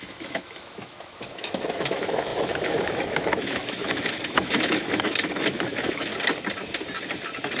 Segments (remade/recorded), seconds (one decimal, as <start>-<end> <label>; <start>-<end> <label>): 0.0-6.1 remade; 6.1-7.6 recorded

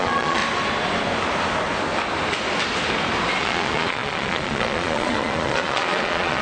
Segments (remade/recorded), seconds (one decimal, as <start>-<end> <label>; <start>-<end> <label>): 0.0-0.4 remade; 0.4-3.4 recorded; 3.4-6.4 remade

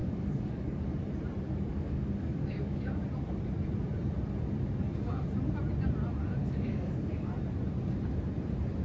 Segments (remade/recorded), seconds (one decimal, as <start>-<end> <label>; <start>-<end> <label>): 0.0-0.8 remade; 0.8-1.7 recorded; 1.7-3.0 remade; 3.0-6.4 recorded; 6.4-7.1 remade; 7.1-8.8 recorded

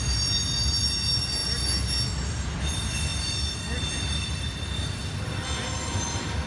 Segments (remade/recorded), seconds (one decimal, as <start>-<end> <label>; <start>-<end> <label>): 0.0-6.5 recorded

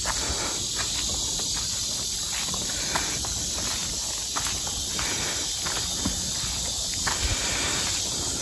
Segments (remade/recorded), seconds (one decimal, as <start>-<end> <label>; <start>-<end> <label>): 0.0-8.4 recorded